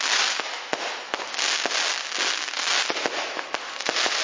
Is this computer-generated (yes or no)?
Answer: no